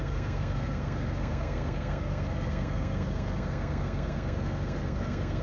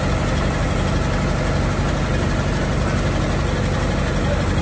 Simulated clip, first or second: first